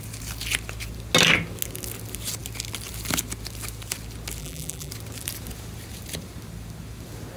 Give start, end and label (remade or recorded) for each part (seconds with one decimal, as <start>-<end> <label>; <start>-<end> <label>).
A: 0.0-4.4 recorded; 4.4-4.9 remade; 4.9-7.4 recorded